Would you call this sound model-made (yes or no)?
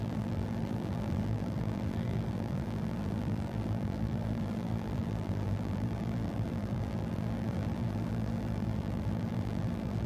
yes